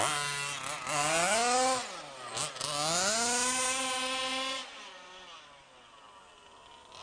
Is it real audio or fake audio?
real